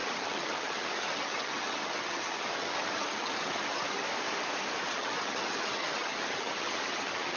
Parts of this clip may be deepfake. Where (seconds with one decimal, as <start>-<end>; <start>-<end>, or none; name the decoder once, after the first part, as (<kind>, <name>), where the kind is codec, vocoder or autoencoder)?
0.0-4.0 (vocoder, HiFi-GAN); 4.8-7.4